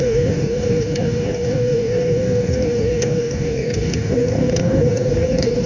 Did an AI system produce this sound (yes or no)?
yes